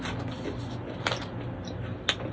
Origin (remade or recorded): recorded